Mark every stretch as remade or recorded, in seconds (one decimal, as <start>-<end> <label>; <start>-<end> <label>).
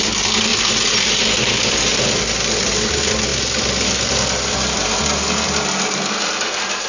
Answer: 0.0-6.9 recorded